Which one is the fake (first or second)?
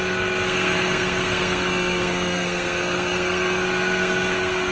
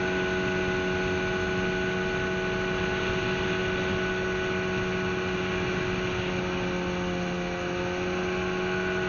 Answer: first